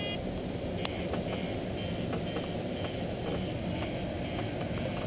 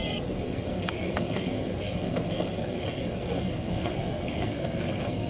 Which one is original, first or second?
first